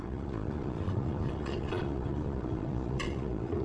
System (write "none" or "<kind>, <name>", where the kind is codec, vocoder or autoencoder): vocoder, Vocos